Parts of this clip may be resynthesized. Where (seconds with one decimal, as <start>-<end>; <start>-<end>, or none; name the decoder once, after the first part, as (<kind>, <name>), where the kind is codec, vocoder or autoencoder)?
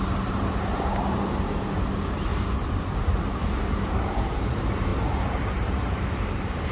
0.0-2.3 (vocoder, BigVGAN v2); 3.6-6.7